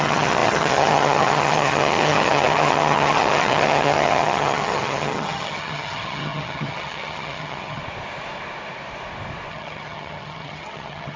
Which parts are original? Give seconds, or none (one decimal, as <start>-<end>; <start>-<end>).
7.8-9.5